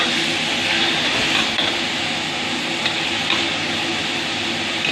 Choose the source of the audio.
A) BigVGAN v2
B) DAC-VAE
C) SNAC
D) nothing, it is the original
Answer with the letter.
D